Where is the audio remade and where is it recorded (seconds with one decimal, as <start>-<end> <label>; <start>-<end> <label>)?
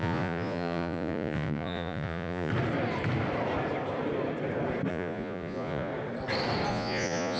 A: 0.0-2.5 remade; 2.5-4.9 recorded; 4.9-5.9 remade; 5.9-6.7 recorded; 6.7-7.4 remade